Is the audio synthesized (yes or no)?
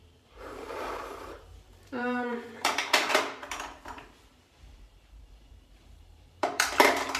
yes